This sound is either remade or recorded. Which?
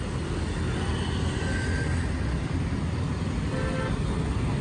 recorded